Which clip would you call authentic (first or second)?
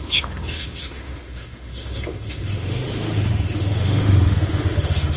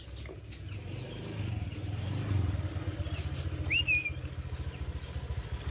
second